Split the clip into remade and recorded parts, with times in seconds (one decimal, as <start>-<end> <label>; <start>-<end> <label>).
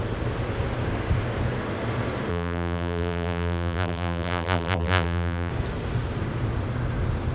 0.0-2.3 recorded; 2.3-5.5 remade; 5.5-7.3 recorded